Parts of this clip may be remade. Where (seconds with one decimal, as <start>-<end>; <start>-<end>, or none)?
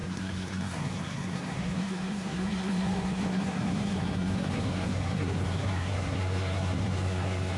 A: 0.0-7.6